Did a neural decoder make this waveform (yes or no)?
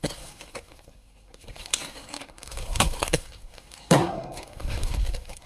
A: yes